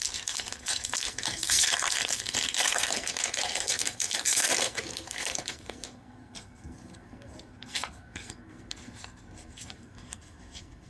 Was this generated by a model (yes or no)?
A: yes